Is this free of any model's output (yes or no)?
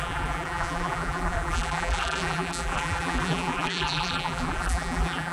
no